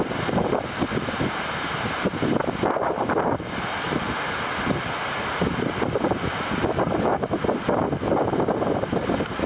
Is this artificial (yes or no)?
no